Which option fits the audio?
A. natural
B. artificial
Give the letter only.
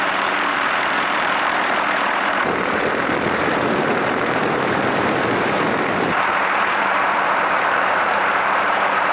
B